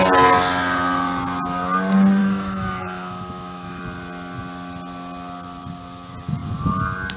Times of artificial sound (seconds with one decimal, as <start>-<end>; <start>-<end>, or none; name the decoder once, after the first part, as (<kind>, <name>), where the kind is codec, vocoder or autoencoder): 2.2-3.8 (autoencoder, DAC-VAE)